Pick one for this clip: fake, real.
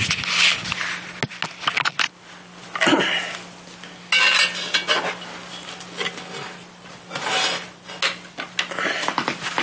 real